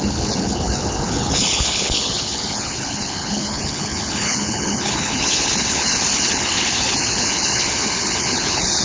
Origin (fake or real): fake